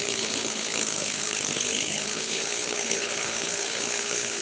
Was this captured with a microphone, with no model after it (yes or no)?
no